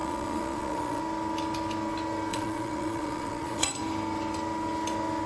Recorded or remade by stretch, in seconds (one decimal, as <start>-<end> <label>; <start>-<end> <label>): 0.0-1.0 remade; 1.0-2.3 recorded; 2.3-3.8 remade; 3.8-5.3 recorded